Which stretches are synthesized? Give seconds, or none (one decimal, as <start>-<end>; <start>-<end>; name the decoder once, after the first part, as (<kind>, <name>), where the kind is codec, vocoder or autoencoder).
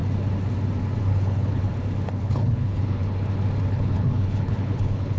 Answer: 1.0-1.7 (codec, HILCodec); 2.2-3.0; 3.6-5.2